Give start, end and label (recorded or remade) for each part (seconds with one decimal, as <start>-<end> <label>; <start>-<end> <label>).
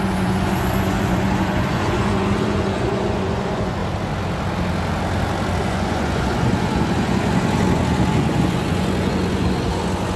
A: 0.0-3.8 remade; 3.8-5.6 recorded; 5.6-10.2 remade